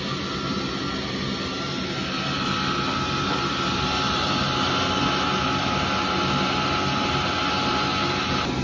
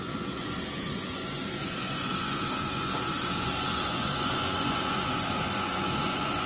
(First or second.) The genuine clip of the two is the first